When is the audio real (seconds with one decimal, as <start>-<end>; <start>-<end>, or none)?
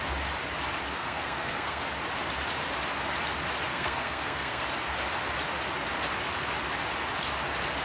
0.0-1.0; 1.8-3.7; 4.6-7.8